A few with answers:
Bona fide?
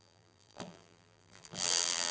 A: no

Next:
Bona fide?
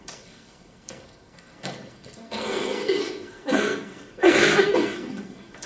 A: no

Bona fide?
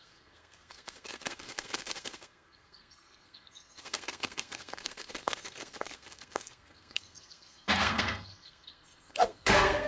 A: no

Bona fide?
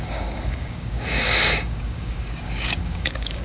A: no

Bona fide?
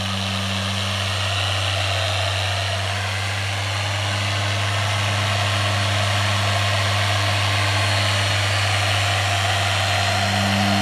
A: yes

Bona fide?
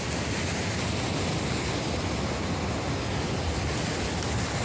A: yes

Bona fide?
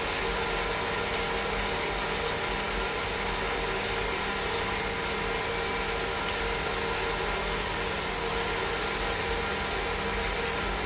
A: yes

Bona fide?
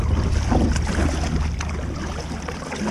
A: yes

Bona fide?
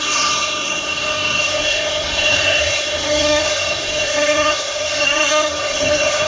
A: no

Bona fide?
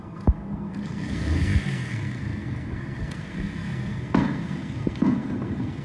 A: no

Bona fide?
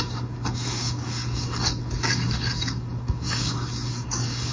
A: no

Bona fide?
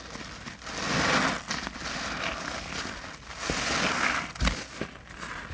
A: yes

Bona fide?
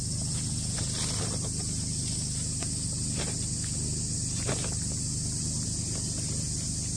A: yes